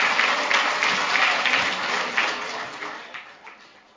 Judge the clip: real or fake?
real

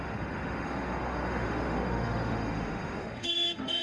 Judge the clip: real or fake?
fake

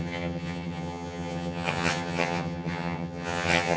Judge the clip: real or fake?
fake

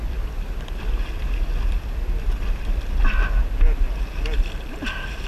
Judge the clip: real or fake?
real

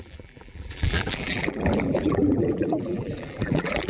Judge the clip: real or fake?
fake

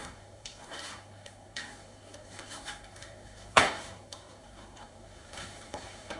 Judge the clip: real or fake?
fake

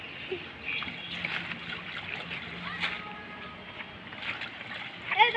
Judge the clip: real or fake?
real